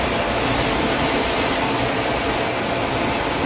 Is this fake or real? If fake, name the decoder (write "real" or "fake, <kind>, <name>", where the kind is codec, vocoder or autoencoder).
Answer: real